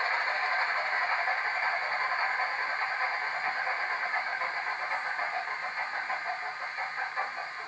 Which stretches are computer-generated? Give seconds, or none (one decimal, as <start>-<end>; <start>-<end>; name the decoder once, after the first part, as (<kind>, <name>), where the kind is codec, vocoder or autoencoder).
none